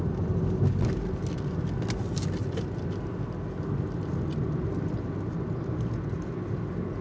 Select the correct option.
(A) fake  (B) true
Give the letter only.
B